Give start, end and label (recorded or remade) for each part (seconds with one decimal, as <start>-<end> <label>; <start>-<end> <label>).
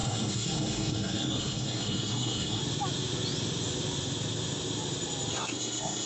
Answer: 0.0-2.6 remade; 2.6-5.3 recorded; 5.3-6.1 remade